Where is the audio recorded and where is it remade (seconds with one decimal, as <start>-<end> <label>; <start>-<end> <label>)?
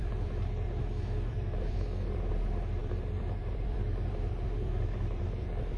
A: 0.0-5.8 remade